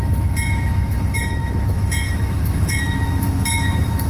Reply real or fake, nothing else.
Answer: fake